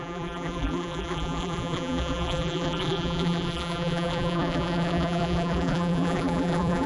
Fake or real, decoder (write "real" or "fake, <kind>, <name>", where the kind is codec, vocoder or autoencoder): fake, vocoder, BigVGAN v2